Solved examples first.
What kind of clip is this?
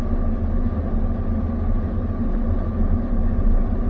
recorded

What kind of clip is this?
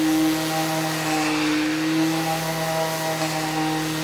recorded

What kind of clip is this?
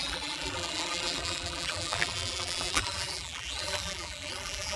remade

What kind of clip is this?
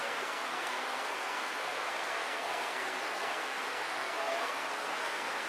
remade